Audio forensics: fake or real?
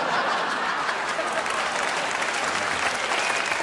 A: real